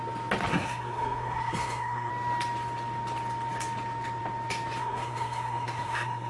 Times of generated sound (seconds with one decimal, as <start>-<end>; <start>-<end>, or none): 0.5-2.1; 4.8-6.3